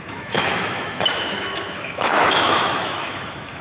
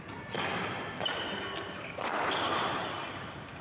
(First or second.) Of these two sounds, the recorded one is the second